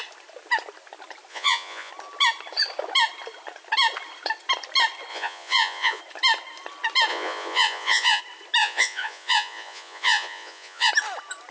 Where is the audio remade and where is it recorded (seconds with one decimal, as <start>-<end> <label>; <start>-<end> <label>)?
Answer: 0.0-1.3 recorded; 1.3-1.9 remade; 1.9-5.1 recorded; 5.1-6.0 remade; 6.0-7.1 recorded; 7.1-8.2 remade; 8.2-8.6 recorded; 8.6-10.9 remade; 10.9-11.5 recorded